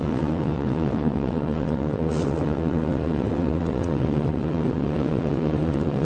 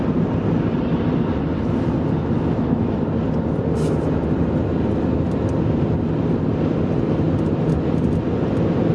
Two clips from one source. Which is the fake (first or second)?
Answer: first